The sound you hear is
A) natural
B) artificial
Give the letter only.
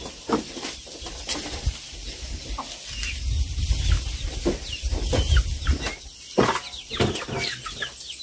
A